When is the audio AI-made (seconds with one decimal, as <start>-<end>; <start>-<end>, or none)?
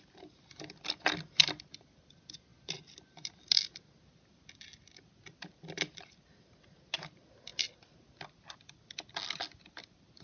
none